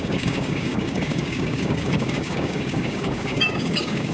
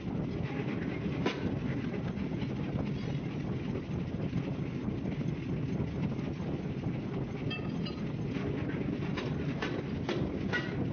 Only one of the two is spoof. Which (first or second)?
first